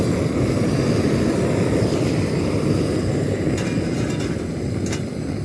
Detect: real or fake real